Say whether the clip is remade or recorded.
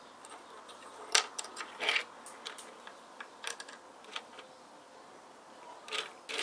recorded